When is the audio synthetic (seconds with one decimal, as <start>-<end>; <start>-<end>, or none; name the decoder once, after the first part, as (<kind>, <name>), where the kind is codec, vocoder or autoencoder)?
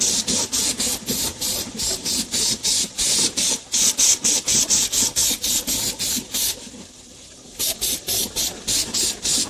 1.3-3.6 (vocoder, BigVGAN v2)